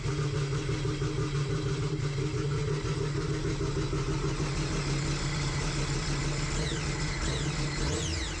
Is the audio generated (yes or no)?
no